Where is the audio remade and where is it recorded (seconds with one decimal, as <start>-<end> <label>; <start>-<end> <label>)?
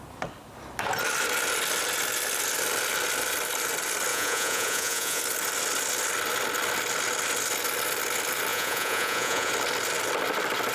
0.0-4.1 recorded; 4.1-5.2 remade; 5.2-8.5 recorded; 8.5-9.5 remade; 9.5-10.7 recorded